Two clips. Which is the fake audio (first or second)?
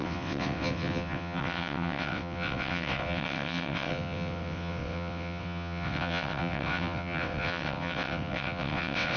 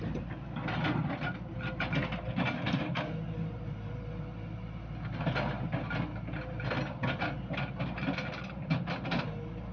first